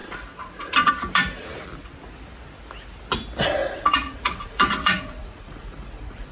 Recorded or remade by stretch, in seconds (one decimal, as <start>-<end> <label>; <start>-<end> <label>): 0.0-0.9 remade; 0.9-3.6 recorded; 3.6-6.3 remade